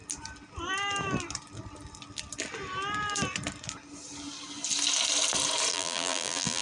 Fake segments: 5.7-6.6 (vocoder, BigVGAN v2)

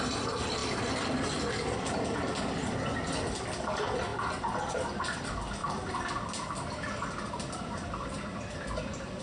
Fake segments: none

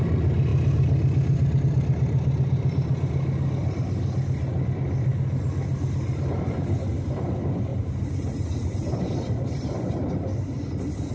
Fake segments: 7.7-9.0 (vocoder, BigVGAN v2)